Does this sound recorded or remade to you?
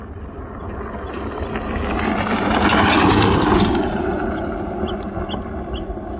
recorded